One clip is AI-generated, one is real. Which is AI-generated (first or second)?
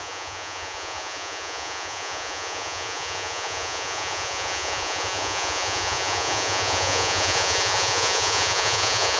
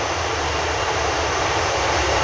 first